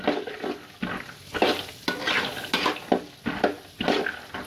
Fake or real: real